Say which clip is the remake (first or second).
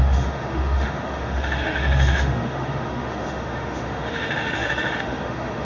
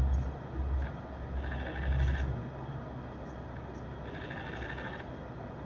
first